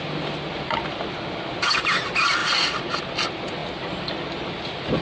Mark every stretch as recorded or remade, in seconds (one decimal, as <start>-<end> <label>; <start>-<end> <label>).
0.0-2.4 recorded; 2.4-3.0 remade; 3.0-5.0 recorded